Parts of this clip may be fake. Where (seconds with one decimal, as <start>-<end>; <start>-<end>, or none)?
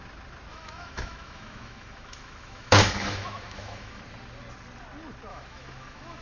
0.5-4.0; 5.3-6.2